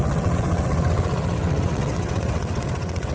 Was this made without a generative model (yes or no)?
no